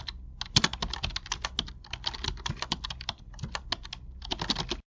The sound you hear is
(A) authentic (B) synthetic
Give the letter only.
A